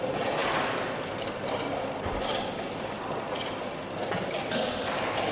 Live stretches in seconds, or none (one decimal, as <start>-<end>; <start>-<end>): 0.0-5.3